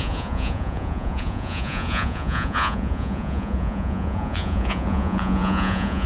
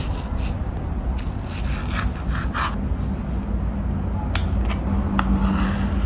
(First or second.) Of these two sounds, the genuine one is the second